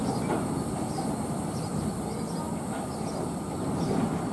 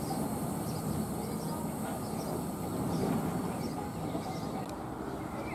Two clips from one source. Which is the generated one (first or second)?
first